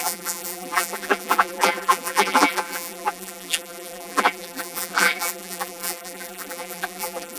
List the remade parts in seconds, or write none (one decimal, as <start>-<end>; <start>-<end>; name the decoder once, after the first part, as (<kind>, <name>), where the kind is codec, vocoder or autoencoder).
0.0-7.4 (vocoder, BigVGAN v2)